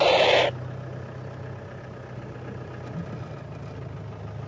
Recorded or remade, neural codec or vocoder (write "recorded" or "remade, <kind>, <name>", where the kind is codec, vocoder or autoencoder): recorded